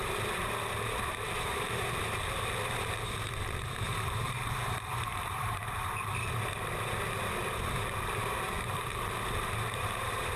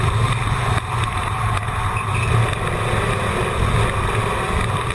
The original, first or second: second